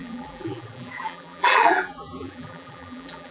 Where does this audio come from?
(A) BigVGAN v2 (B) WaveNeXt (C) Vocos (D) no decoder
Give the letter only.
A